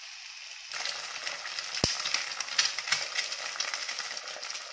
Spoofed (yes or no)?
no